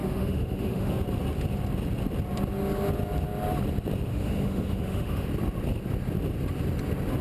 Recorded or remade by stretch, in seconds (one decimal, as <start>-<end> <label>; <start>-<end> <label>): 0.0-0.9 remade; 0.9-4.1 recorded; 4.1-5.3 remade; 5.3-7.2 recorded